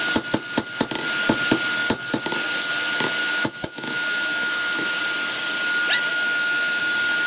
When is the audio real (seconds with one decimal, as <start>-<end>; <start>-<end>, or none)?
0.0-3.2; 5.0-6.1; 6.8-7.3